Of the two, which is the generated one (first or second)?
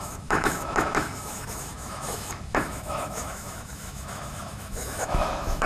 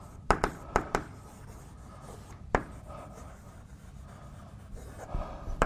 first